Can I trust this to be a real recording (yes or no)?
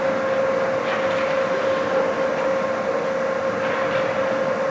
yes